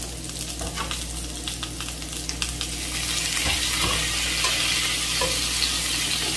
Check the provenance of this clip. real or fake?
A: real